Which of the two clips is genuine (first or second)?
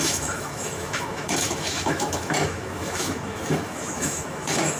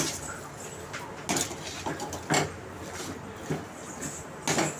second